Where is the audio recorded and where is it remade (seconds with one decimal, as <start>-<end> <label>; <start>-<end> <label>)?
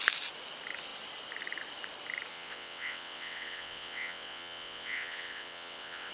0.0-2.3 recorded; 2.3-6.1 remade